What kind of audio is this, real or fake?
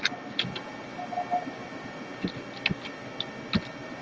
real